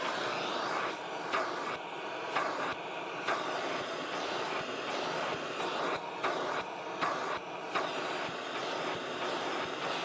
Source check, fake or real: real